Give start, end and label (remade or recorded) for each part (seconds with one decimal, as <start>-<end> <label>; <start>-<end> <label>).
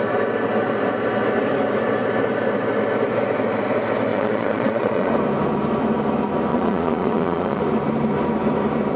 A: 0.0-4.1 recorded; 4.1-5.1 remade; 5.1-6.5 recorded; 6.5-7.6 remade; 7.6-9.0 recorded